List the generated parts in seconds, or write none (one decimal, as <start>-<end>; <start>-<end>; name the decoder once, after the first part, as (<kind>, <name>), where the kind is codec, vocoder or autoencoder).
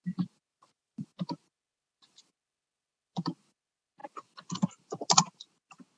0.5-1.1 (vocoder, BigVGAN v2)